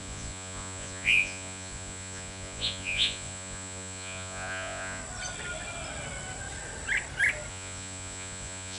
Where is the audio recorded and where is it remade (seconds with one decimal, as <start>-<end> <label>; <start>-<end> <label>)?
0.0-5.0 remade; 5.0-7.5 recorded; 7.5-8.8 remade